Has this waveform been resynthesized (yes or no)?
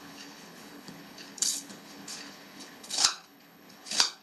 yes